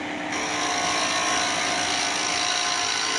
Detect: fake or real real